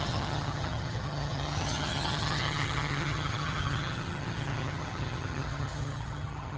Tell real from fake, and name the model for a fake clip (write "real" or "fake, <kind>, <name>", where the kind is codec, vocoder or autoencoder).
fake, vocoder, HiFi-GAN